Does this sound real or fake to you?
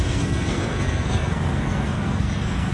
fake